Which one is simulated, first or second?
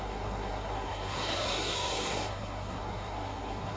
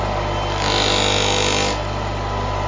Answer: first